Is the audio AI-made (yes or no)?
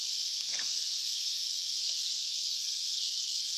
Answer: yes